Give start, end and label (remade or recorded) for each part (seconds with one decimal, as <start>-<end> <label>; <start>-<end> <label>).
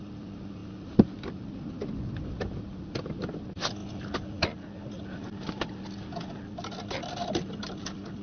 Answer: 0.0-8.2 recorded